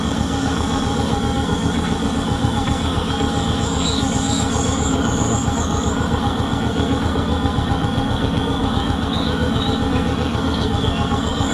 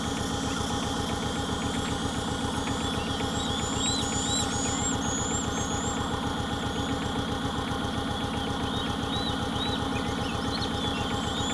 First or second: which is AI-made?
first